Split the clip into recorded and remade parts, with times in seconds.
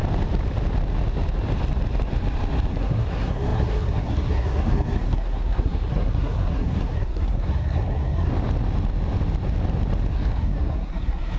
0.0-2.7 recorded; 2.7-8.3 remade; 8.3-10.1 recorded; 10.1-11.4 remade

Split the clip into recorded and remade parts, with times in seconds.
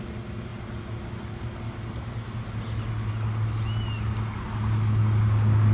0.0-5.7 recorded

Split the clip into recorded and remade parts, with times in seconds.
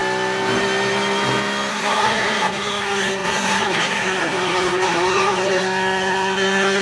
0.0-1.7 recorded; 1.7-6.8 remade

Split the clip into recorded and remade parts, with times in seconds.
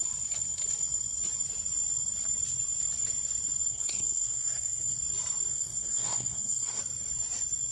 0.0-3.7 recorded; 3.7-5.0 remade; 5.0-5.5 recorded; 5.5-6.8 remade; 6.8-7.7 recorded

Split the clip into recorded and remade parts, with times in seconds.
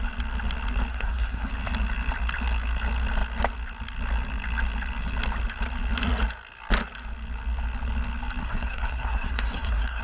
0.0-0.9 recorded; 0.9-1.5 remade; 1.5-8.4 recorded; 8.4-10.0 remade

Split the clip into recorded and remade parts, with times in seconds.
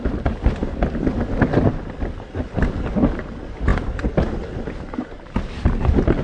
0.0-6.2 recorded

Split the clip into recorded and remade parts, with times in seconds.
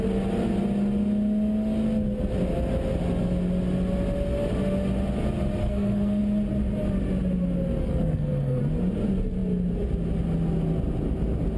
0.0-5.6 recorded; 5.6-6.2 remade; 6.2-7.8 recorded; 7.8-8.6 remade; 8.6-11.6 recorded